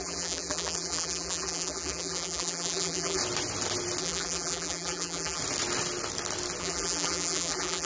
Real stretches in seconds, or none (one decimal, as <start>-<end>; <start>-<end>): 3.2-4.0; 5.4-6.6